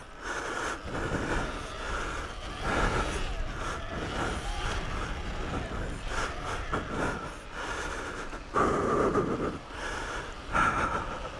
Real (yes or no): yes